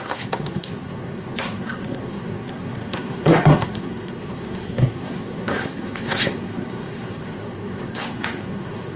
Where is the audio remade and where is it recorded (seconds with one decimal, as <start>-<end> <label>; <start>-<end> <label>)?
0.0-9.0 remade